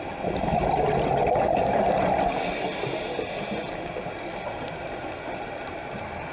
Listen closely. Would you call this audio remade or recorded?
recorded